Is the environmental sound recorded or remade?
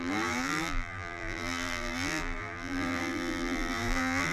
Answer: remade